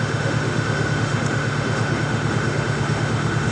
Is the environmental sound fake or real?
fake